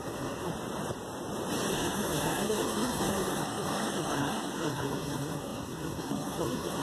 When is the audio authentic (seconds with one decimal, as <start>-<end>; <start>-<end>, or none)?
0.5-1.7

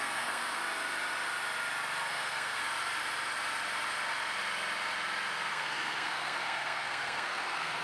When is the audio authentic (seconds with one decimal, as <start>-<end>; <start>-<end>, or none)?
0.6-2.1; 2.6-5.5

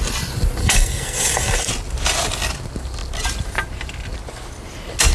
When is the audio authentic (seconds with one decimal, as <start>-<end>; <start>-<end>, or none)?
0.0-0.6; 1.7-5.1

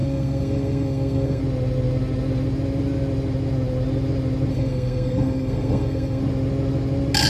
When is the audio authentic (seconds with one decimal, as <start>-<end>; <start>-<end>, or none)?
1.4-4.5; 6.2-7.3

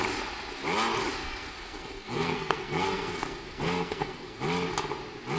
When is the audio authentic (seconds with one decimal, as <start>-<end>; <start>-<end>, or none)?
0.0-1.2; 4.4-5.4

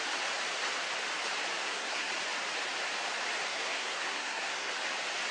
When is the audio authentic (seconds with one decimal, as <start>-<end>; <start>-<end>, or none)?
0.0-1.6; 2.1-3.5; 4.7-5.3

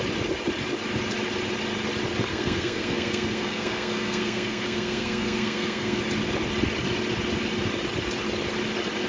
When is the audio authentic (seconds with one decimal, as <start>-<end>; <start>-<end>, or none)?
0.0-2.3; 6.0-9.1

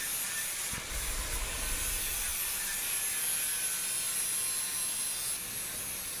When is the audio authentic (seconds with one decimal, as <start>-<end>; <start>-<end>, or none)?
0.0-6.2